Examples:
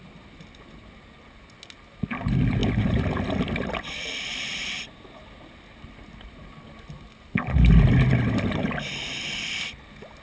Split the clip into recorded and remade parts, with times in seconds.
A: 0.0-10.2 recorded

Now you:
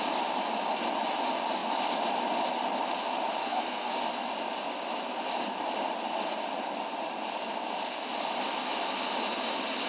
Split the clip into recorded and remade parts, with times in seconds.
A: 0.0-3.4 recorded; 3.4-4.0 remade; 4.0-9.9 recorded

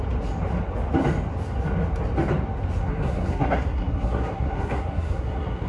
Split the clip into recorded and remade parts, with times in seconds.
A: 0.0-2.8 recorded; 2.8-5.7 remade

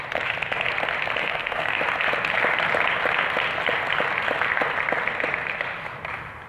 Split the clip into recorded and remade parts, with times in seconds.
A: 0.0-1.2 recorded; 1.2-1.8 remade; 1.8-6.5 recorded